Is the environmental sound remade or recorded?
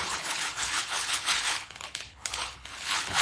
remade